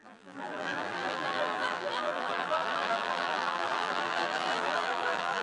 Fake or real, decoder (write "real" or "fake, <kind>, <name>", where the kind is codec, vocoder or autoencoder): fake, vocoder, BigVGAN v2